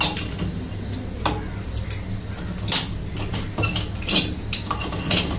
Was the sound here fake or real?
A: real